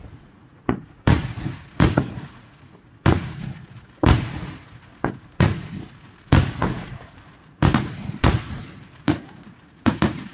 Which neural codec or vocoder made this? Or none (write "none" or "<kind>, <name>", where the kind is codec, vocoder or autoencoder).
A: vocoder, Vocos